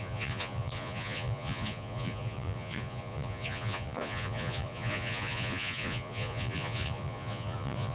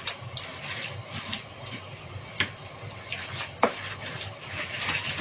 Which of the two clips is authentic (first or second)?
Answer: second